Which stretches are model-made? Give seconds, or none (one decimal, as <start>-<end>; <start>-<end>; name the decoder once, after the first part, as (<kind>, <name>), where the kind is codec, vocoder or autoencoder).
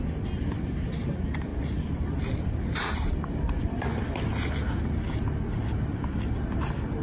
none